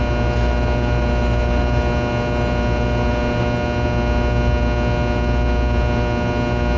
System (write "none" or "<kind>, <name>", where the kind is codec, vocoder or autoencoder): none